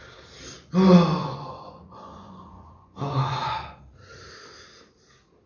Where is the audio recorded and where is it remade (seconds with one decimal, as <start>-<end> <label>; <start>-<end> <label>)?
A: 0.0-1.2 recorded; 1.2-3.8 remade; 3.8-5.5 recorded